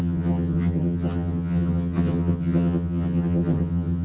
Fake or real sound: fake